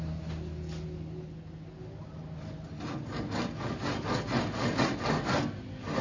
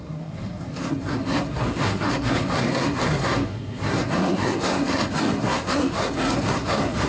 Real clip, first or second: first